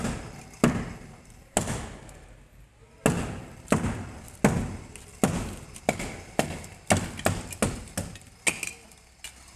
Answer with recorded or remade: recorded